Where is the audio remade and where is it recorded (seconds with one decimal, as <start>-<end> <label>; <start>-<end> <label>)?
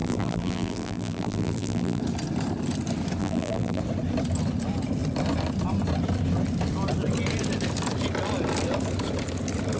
0.0-2.0 remade; 2.0-3.2 recorded; 3.2-3.8 remade; 3.8-9.8 recorded